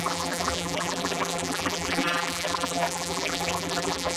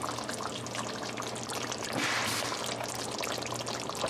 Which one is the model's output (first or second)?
first